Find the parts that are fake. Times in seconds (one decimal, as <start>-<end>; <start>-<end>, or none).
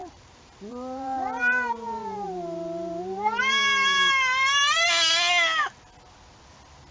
0.0-4.1